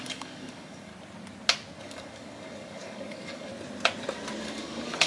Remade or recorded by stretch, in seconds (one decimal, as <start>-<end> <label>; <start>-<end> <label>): 0.0-0.9 remade; 0.9-1.8 recorded; 1.8-3.5 remade; 3.5-4.4 recorded; 4.4-5.1 remade